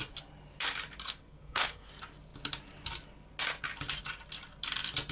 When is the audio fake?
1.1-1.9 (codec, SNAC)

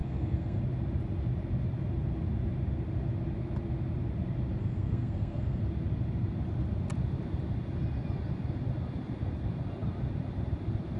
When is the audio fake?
0.0-0.6 (codec, SNAC); 4.6-5.6